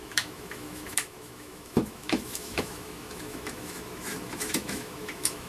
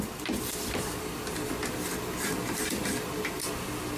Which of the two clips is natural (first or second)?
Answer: second